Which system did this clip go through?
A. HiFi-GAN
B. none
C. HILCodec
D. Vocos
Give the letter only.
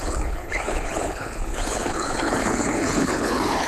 C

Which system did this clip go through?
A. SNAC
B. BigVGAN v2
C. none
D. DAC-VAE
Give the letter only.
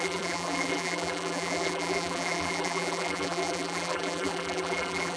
B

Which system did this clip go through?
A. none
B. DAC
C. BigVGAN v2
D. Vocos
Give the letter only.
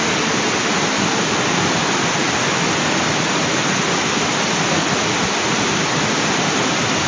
A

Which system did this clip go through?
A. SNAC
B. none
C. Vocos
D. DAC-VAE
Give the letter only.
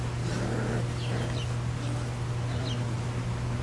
B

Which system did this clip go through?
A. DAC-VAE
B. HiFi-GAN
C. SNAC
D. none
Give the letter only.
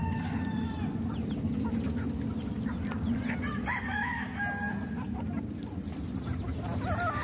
D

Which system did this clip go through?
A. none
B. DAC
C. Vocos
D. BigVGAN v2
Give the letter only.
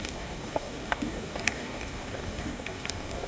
B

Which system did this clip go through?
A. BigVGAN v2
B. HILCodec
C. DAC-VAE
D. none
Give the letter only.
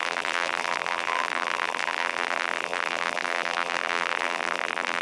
A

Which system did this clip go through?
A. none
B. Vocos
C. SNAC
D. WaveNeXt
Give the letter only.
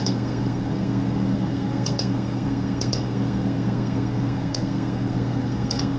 C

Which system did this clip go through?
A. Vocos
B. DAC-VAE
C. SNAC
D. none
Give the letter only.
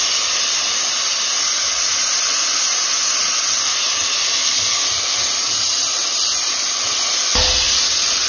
D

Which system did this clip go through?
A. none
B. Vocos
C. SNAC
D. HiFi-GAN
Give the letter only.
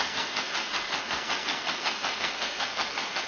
C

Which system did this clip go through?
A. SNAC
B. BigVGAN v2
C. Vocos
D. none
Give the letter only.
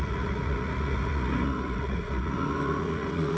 C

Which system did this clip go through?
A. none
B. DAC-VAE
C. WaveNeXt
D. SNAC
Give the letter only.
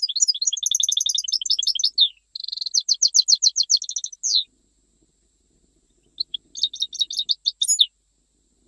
A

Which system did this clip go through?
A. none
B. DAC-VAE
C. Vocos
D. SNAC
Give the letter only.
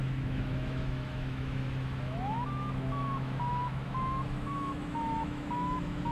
B